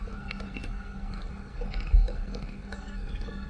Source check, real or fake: fake